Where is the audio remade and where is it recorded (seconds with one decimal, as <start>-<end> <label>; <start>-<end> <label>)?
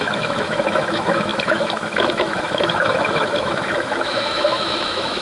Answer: 0.0-5.2 remade